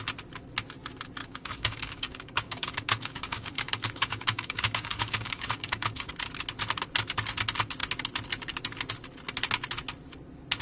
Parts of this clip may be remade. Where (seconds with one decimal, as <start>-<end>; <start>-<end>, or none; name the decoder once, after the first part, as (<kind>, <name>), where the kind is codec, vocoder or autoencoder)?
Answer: 1.2-6.1 (codec, DAC)